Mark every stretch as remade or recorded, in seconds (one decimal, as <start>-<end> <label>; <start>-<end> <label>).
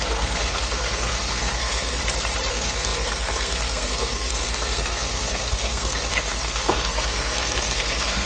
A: 0.0-2.0 remade; 2.0-2.5 recorded; 2.5-8.3 remade